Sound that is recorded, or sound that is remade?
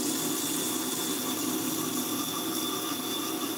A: recorded